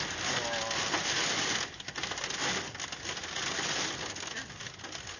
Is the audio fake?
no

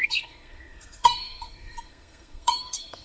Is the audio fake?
yes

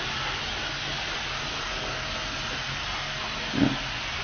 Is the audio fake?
no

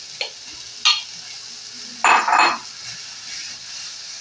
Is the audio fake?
no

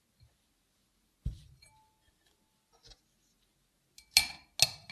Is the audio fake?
no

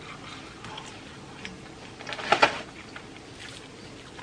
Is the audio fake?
no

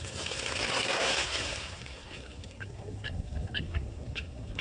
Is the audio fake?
yes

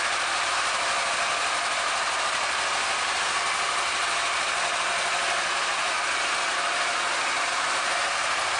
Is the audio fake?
no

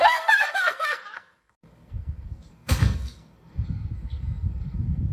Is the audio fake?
yes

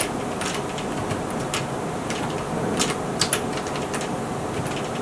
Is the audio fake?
no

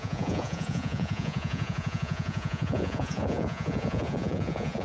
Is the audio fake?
yes